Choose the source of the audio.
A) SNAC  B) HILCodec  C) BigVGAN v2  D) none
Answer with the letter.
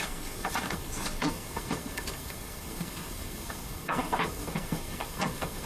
A